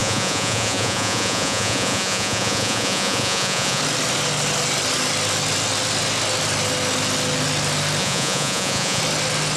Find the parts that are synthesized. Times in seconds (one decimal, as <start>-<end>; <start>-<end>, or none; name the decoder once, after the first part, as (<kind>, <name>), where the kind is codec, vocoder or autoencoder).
0.0-3.8 (vocoder, Vocos); 8.0-9.0